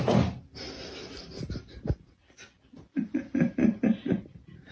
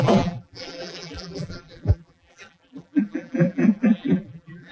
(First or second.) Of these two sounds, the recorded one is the first